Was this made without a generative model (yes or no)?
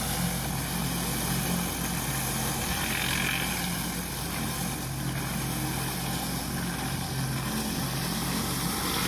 yes